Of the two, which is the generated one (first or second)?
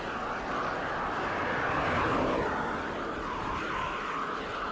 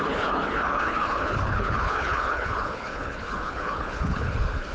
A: second